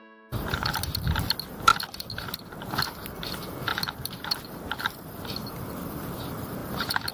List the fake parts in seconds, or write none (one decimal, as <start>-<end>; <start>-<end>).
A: 3.7-4.5; 6.6-7.1